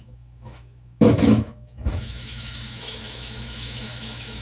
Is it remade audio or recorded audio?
remade